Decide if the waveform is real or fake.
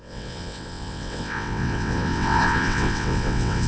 fake